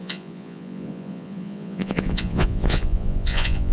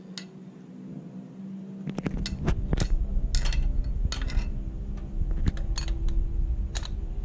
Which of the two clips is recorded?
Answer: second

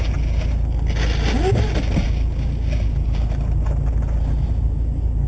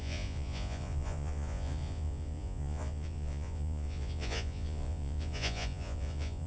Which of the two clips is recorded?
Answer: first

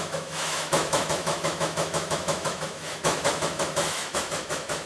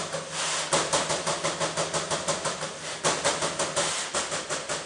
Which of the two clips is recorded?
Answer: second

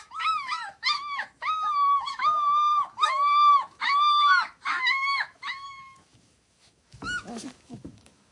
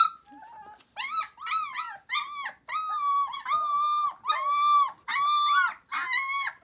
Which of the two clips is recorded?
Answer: second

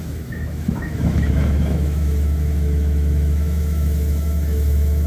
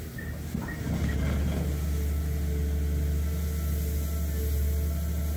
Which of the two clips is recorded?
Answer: second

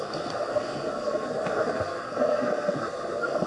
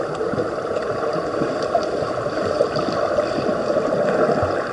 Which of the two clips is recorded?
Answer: second